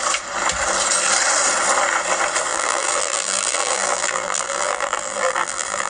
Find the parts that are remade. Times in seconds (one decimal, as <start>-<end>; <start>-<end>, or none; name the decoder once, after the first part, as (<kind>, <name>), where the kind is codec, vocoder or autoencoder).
2.5-5.9 (vocoder, BigVGAN v2)